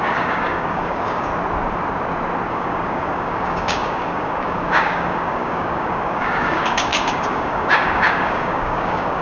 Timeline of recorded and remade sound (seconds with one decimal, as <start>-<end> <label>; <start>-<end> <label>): 0.0-1.3 remade; 1.3-2.5 recorded; 2.5-9.2 remade